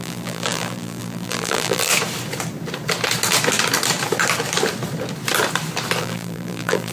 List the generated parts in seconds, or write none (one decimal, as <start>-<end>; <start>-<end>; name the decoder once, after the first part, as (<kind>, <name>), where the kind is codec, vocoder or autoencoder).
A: 0.0-1.9 (vocoder, BigVGAN v2); 6.0-6.9